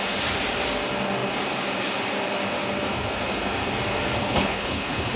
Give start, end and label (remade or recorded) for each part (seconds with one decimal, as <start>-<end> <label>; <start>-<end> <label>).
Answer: 0.0-4.2 recorded; 4.2-5.2 remade